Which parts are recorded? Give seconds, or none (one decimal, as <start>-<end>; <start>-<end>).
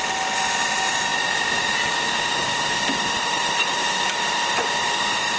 0.0-5.4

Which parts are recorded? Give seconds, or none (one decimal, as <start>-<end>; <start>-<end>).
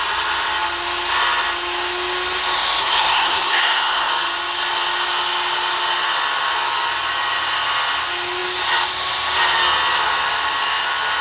0.0-2.8; 4.1-11.2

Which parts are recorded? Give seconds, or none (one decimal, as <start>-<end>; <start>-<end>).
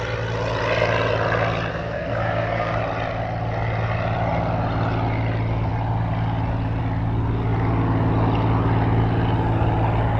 0.0-1.7; 2.8-10.2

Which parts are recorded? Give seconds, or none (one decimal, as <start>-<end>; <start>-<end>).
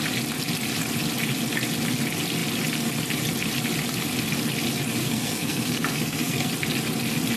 0.0-5.0; 6.5-7.4